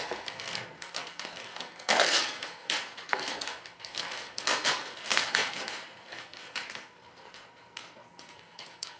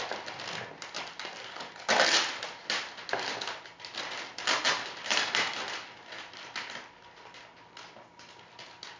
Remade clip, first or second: first